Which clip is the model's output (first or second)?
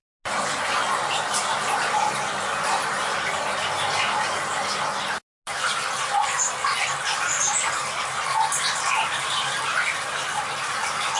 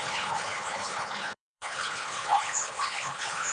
second